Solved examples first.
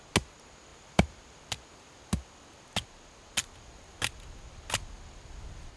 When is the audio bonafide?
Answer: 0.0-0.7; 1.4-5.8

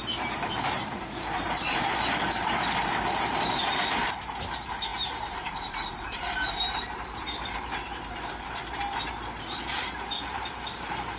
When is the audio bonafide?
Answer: none

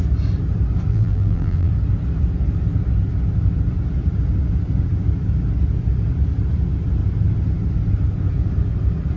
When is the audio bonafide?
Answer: 0.0-0.9; 1.7-9.2

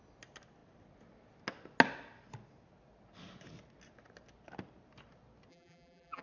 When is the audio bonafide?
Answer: 0.0-5.5

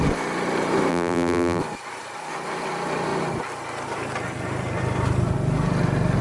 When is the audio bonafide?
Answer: 0.0-0.9; 1.6-6.2

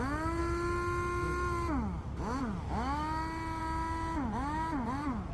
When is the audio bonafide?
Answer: 0.0-5.3

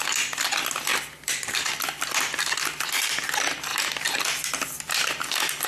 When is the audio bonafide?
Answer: 0.0-0.9; 3.2-3.7

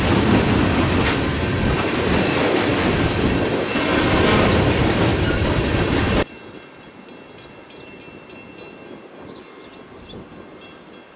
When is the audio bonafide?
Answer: 0.0-5.1; 5.9-11.2